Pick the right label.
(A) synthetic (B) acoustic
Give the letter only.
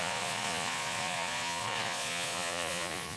A